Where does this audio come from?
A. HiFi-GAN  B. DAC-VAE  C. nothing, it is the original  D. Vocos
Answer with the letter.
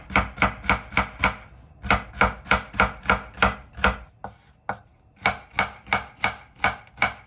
C